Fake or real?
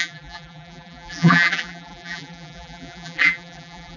fake